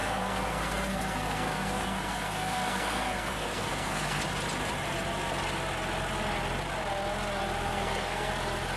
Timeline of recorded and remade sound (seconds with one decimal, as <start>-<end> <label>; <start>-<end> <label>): 0.0-4.2 remade; 4.2-7.7 recorded; 7.7-8.3 remade; 8.3-8.8 recorded